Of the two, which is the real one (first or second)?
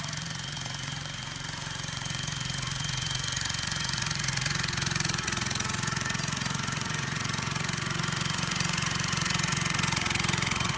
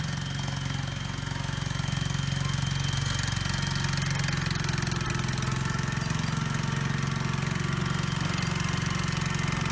second